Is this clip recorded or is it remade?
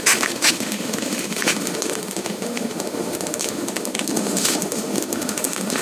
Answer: remade